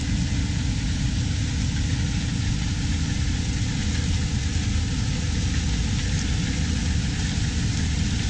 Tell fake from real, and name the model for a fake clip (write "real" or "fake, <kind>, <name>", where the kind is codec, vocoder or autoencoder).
real